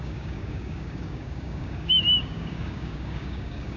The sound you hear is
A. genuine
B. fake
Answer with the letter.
B